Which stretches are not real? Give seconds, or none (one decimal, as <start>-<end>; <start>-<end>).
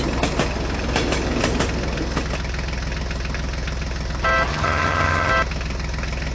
4.5-5.3